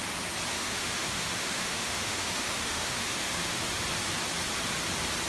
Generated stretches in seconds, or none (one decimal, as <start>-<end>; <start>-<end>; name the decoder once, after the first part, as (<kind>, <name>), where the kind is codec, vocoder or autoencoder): 0.5-3.7 (autoencoder, DAC-VAE)